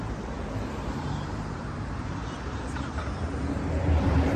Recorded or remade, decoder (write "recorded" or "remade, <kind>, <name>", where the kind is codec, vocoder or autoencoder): remade, vocoder, BigVGAN v2